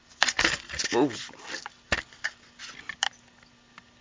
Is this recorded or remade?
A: recorded